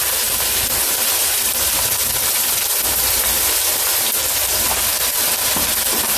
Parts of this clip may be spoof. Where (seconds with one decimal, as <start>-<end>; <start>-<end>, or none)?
2.9-4.2